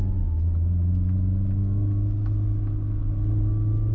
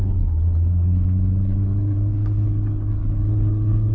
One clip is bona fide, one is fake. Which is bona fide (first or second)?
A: first